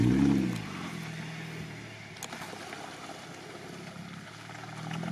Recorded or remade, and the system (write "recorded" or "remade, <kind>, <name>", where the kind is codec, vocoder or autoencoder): recorded